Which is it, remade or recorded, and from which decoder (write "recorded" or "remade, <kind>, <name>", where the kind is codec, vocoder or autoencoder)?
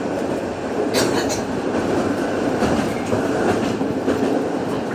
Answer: remade, vocoder, BigVGAN v2